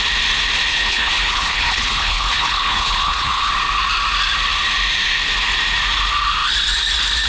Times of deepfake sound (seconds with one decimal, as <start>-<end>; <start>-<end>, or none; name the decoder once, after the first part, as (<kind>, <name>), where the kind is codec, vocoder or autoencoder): 0.7-3.5 (codec, HILCodec)